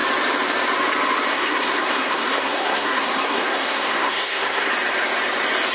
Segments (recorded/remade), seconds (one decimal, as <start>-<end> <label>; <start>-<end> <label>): 0.0-1.3 recorded; 1.3-4.7 remade; 4.7-5.7 recorded